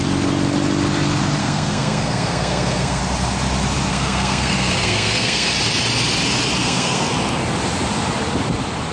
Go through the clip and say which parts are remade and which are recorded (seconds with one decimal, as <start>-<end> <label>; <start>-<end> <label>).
0.0-1.4 recorded; 1.4-3.0 remade; 3.0-3.9 recorded; 3.9-5.5 remade; 5.5-6.6 recorded; 6.6-7.1 remade; 7.1-8.9 recorded